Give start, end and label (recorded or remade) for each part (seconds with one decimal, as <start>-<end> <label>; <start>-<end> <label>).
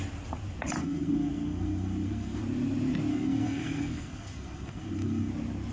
0.0-0.8 recorded; 0.8-2.4 remade; 2.4-3.1 recorded; 3.1-5.3 remade; 5.3-5.7 recorded